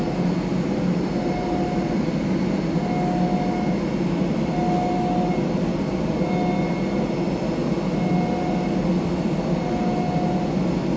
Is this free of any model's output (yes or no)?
yes